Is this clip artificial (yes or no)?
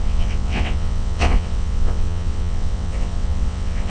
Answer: yes